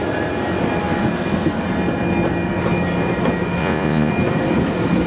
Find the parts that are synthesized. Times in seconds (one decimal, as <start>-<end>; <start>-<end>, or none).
3.6-4.1